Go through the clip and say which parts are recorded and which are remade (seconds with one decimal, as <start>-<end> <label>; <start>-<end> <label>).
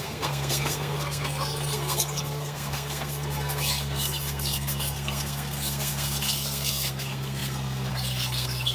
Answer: 0.0-8.7 remade